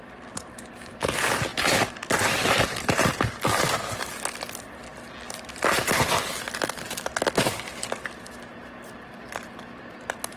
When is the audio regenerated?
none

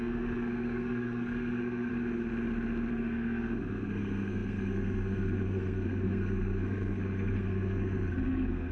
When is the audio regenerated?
0.0-1.9 (codec, SNAC); 2.9-8.7

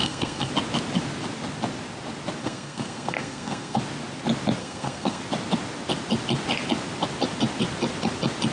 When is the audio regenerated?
0.0-0.5 (codec, SNAC); 2.4-3.8; 4.6-5.2

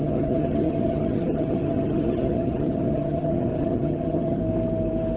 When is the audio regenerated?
0.0-4.4 (vocoder, HiFi-GAN)

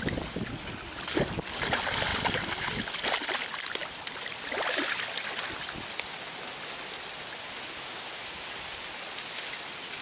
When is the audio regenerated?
none